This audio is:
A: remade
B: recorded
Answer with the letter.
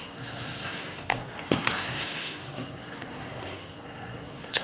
A